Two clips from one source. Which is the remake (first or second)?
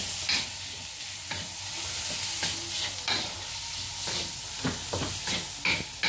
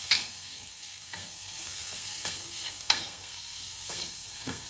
second